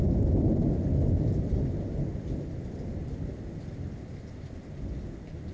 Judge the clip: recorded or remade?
recorded